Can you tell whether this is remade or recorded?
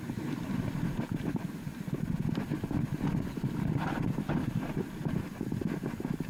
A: recorded